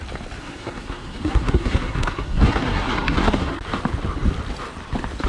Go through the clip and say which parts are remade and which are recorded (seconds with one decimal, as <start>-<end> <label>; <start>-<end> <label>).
0.0-0.4 recorded; 0.4-3.6 remade; 3.6-5.3 recorded